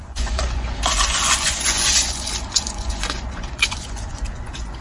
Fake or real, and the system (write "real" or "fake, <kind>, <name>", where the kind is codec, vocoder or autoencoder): fake, vocoder, Vocos